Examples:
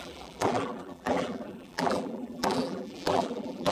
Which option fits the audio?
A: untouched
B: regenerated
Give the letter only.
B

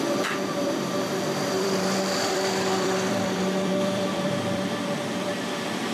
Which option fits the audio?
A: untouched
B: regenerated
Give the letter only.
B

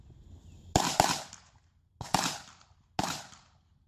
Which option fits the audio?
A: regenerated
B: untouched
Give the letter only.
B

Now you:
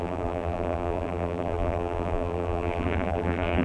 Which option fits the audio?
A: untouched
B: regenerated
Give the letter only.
B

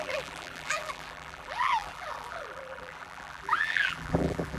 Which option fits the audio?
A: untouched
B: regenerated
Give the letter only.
B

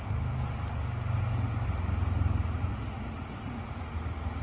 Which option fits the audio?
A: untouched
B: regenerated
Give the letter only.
A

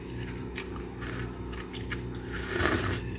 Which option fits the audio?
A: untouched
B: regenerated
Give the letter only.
A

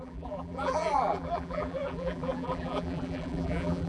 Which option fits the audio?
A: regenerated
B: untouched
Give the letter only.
A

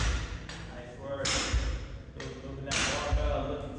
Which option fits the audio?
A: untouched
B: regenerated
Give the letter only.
A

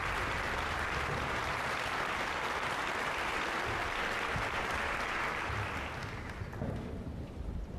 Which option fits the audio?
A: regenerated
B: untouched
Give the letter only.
B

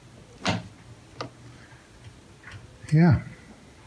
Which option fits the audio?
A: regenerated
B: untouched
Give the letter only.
B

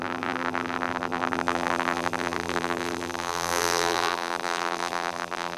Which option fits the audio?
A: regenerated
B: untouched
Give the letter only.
A